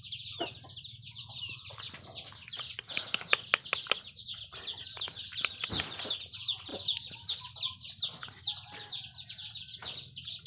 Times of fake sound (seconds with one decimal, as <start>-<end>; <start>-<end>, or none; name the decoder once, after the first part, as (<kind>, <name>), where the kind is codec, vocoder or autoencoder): none